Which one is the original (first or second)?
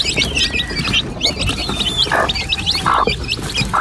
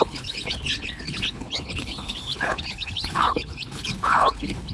first